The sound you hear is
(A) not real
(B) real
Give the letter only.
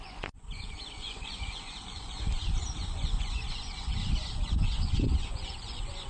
A